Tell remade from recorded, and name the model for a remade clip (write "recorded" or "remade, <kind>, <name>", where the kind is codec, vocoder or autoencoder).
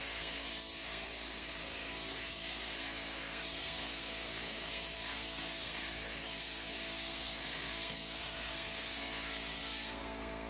remade, codec, SNAC